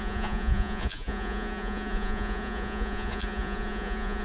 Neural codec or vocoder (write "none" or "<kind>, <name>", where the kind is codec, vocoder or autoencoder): vocoder, Vocos